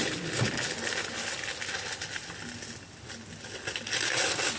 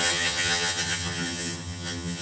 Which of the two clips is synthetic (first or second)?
second